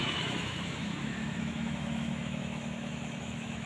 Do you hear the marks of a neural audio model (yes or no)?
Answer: yes